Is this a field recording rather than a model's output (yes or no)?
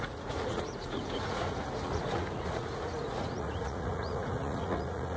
no